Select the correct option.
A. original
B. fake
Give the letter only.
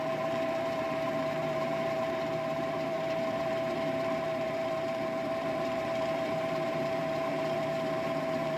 B